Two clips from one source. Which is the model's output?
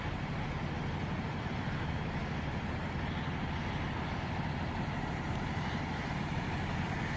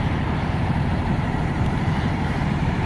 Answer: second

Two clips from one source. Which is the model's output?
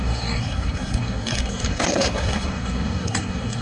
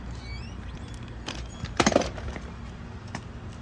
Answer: first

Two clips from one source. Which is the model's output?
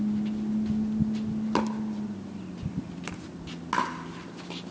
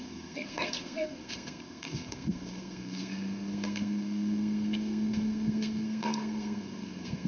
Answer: second